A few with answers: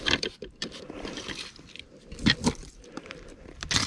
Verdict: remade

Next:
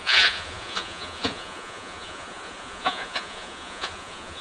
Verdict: remade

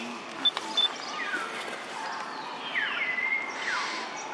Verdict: recorded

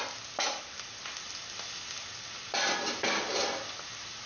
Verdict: recorded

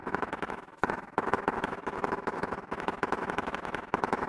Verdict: remade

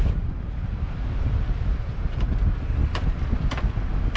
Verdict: recorded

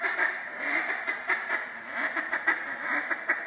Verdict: remade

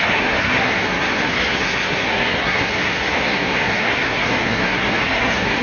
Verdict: remade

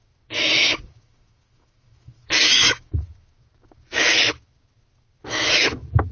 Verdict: remade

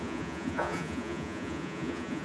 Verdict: remade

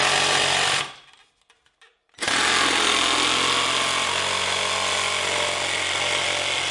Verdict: recorded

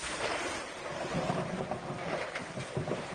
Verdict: remade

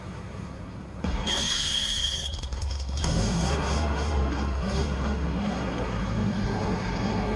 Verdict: remade